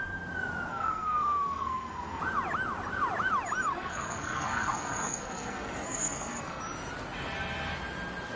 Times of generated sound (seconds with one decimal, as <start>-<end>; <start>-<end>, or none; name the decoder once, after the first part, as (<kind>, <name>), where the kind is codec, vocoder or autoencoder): 0.7-2.2 (codec, SNAC); 3.7-6.6